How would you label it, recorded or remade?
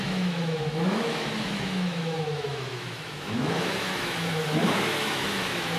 remade